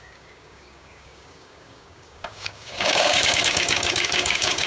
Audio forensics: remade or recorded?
remade